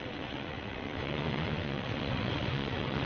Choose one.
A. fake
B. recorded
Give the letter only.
A